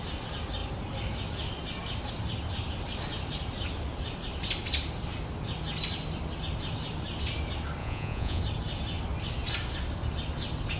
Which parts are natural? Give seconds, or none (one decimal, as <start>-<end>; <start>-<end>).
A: 0.0-7.8; 8.4-10.8